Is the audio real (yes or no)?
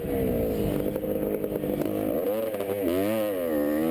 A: yes